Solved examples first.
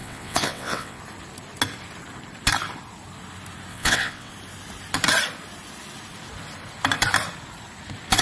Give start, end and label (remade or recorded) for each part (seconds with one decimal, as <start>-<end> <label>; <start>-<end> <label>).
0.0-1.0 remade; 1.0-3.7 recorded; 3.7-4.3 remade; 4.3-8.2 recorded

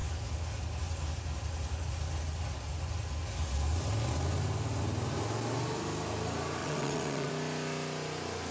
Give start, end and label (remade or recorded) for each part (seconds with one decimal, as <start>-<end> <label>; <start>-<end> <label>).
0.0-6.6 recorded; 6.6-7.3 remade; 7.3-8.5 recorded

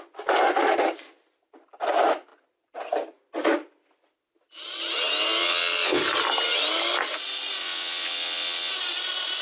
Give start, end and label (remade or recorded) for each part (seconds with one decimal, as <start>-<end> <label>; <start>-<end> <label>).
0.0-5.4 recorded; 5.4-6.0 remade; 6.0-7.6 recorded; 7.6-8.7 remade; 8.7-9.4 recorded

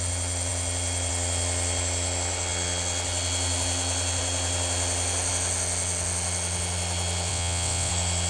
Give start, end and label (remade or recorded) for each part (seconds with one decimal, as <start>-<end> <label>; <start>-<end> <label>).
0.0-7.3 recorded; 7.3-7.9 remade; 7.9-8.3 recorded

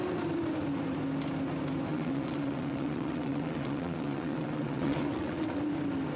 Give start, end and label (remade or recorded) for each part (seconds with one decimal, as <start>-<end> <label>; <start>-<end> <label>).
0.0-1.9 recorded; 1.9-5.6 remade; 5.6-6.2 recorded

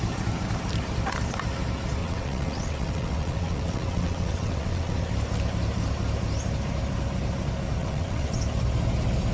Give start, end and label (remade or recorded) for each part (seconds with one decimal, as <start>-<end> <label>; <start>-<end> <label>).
0.0-2.0 recorded; 2.0-5.1 remade; 5.1-7.8 recorded; 7.8-8.4 remade; 8.4-9.3 recorded

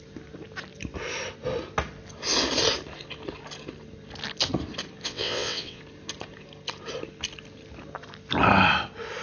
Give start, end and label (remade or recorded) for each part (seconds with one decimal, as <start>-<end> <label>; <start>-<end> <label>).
0.0-5.0 recorded; 5.0-5.8 remade; 5.8-9.2 recorded

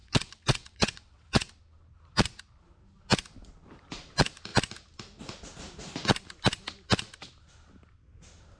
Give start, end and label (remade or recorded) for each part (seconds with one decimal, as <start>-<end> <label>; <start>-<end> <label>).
0.0-1.5 remade; 1.5-8.6 recorded